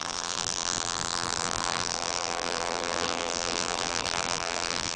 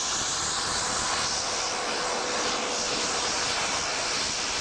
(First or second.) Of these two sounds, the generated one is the first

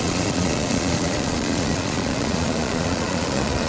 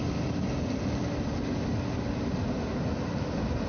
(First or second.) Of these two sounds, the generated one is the first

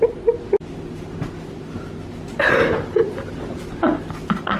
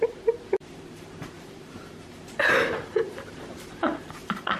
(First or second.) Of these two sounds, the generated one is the second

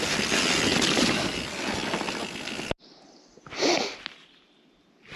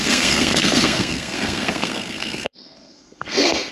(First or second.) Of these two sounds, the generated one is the second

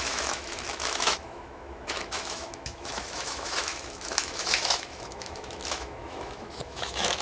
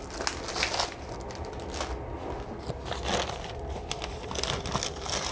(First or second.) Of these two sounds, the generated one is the first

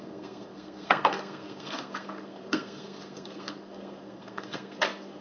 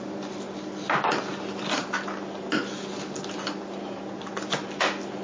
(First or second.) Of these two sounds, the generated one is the first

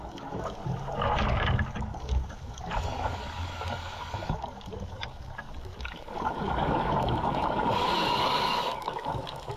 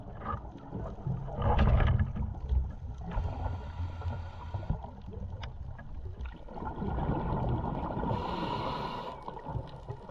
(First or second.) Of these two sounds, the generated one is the first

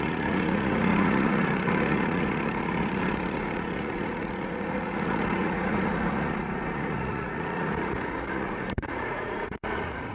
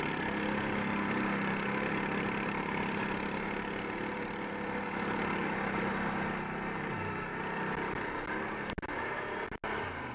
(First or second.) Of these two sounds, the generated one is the first